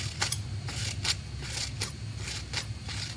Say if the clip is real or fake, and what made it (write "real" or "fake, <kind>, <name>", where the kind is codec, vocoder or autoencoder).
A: real